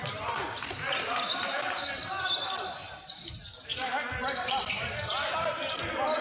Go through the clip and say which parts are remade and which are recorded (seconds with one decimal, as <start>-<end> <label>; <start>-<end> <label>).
0.0-6.2 recorded